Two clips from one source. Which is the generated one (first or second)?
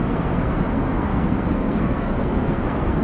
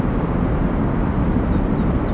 first